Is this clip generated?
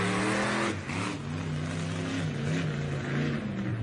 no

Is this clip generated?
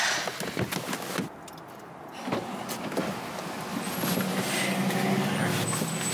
no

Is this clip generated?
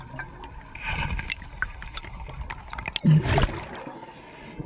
no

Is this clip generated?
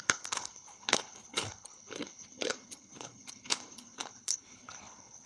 yes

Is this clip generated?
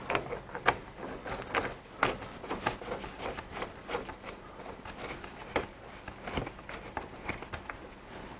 no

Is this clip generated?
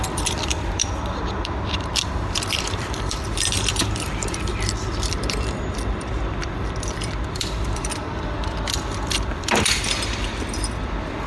yes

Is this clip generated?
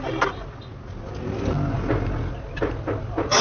no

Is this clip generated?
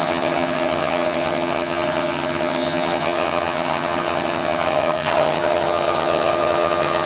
yes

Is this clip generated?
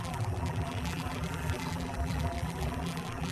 yes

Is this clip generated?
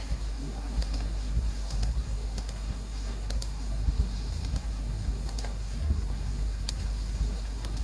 yes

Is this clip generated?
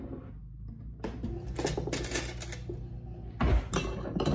no